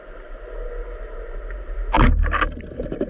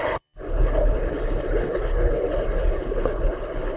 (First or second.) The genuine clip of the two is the first